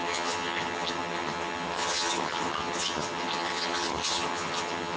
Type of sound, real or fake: fake